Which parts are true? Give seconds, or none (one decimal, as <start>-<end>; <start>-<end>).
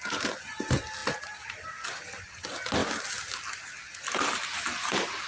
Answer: 0.0-5.3